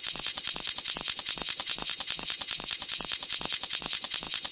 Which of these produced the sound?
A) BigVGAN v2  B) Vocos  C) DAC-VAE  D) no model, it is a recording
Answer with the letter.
B